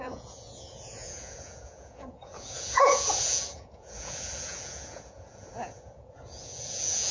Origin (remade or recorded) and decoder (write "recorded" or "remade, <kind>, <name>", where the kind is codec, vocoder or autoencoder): remade, vocoder, Vocos